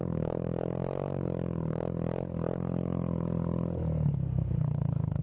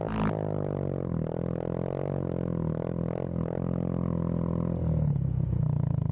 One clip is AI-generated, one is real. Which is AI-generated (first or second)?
first